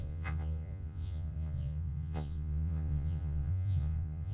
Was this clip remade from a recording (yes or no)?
yes